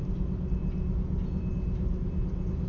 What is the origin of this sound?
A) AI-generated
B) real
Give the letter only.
B